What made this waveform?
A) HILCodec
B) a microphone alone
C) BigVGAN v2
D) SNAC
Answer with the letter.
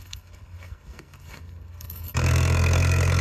D